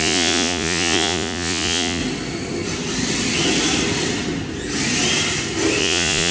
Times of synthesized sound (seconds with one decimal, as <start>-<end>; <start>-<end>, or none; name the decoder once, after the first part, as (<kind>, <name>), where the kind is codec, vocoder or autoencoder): 0.0-2.0 (vocoder, Vocos); 5.8-6.3